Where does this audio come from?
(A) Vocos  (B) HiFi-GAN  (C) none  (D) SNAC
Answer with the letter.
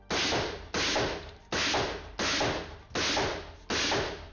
C